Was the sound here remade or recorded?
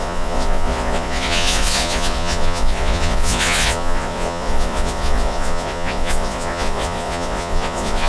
remade